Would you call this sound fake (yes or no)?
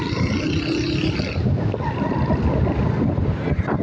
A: no